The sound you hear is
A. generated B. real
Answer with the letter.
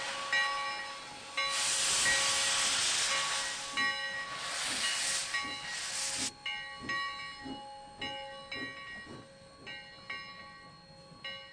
B